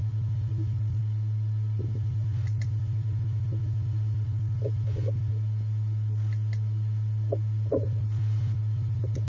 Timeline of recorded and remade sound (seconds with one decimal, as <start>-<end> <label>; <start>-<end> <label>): 0.0-1.0 remade; 1.0-1.8 recorded; 1.8-5.3 remade; 5.3-7.7 recorded; 7.7-9.3 remade